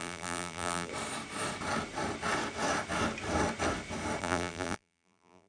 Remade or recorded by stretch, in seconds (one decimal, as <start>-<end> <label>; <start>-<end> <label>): 0.0-0.9 remade; 0.9-4.2 recorded; 4.2-5.5 remade